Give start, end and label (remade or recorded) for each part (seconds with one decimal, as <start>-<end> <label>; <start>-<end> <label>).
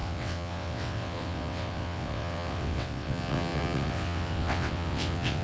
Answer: 0.0-5.4 remade